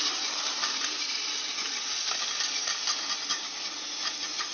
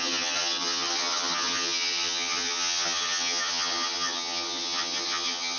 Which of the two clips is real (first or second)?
first